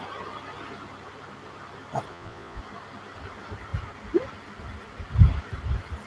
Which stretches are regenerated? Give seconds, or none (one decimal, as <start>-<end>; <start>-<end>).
2.1-2.6